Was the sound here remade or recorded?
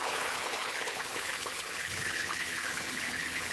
remade